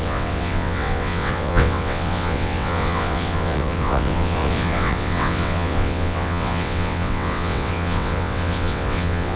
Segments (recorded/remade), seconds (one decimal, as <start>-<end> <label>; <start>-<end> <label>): 0.0-9.4 remade